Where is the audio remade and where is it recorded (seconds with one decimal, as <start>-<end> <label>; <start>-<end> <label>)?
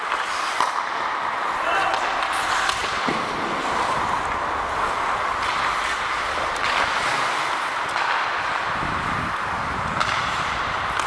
0.0-11.1 recorded